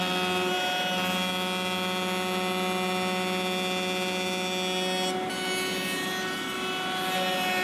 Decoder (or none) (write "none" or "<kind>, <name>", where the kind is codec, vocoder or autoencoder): none